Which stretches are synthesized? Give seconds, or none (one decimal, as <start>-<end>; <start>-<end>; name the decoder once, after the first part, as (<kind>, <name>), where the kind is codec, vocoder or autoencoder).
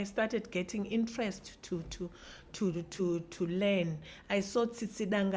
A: 2.2-3.0 (vocoder, Vocos)